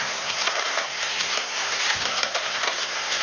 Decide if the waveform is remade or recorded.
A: remade